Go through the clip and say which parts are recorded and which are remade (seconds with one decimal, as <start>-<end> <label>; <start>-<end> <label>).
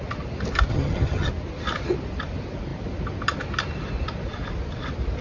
0.0-0.7 recorded; 0.7-1.3 remade; 1.3-5.2 recorded